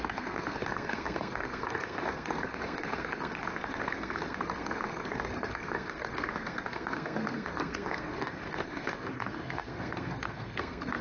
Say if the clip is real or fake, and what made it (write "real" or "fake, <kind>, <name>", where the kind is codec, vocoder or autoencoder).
fake, codec, SNAC